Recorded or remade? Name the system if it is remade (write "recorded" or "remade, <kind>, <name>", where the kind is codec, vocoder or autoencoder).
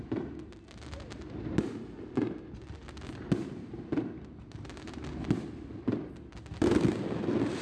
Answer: recorded